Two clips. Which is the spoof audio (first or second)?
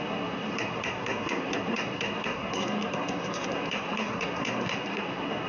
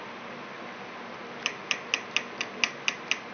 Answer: first